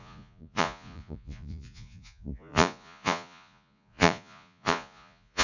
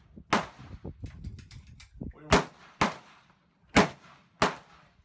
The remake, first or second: first